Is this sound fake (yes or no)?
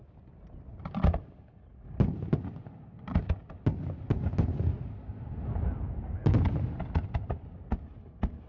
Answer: no